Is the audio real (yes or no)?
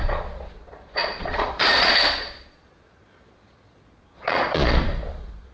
no